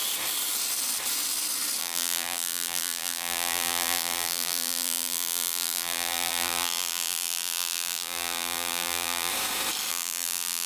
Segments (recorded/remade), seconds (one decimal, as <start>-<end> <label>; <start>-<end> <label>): 0.0-1.8 recorded; 1.8-9.3 remade; 9.3-9.9 recorded; 9.9-10.7 remade